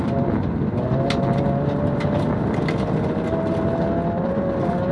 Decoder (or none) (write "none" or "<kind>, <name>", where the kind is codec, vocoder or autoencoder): none